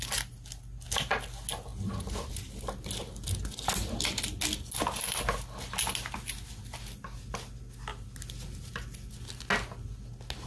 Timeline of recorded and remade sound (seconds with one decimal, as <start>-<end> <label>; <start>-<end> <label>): 0.0-10.5 recorded